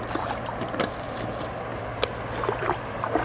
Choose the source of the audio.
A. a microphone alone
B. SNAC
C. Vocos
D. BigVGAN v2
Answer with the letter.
A